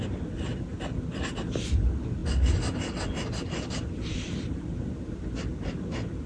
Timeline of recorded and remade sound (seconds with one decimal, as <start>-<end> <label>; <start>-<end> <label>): 0.0-6.3 recorded